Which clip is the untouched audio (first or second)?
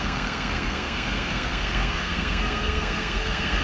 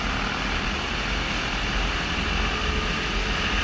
second